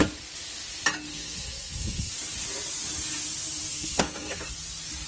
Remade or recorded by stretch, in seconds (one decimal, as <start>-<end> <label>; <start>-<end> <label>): 0.0-1.1 recorded; 1.1-2.1 remade; 2.1-3.7 recorded; 3.7-4.4 remade; 4.4-5.1 recorded